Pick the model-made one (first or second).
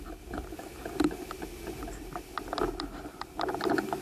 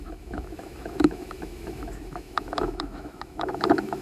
second